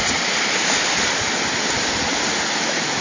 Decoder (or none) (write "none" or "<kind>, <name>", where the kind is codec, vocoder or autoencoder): none